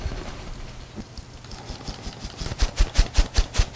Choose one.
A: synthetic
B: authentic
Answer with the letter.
B